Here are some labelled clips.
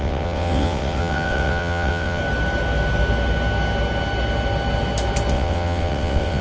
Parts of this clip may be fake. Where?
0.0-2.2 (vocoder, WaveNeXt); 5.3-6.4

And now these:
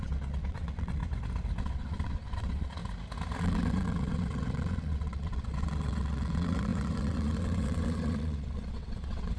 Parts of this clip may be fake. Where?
0.0-1.0 (vocoder, WaveNeXt); 1.6-2.8; 3.4-9.4

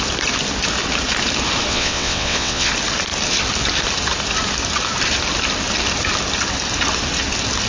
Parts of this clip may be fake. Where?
1.7-2.7 (vocoder, WaveNeXt)

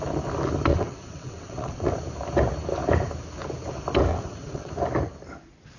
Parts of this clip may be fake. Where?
0.7-1.9 (vocoder, WaveNeXt); 4.1-4.7